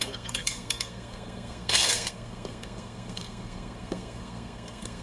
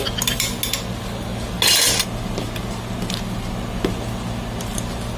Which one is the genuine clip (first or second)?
second